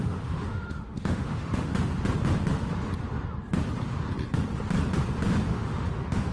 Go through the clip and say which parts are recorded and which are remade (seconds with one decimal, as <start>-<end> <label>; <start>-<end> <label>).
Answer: 0.0-1.7 remade; 1.7-5.5 recorded; 5.5-6.3 remade